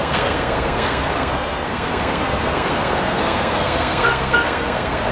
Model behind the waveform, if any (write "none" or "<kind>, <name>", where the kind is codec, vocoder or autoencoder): codec, SNAC